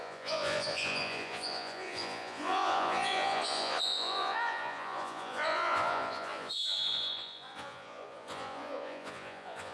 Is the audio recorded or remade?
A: remade